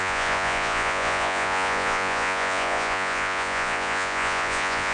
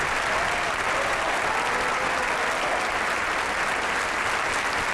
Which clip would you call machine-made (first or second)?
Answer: first